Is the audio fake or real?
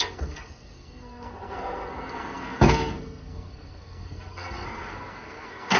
fake